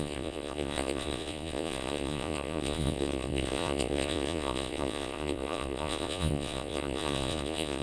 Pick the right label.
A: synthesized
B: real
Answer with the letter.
A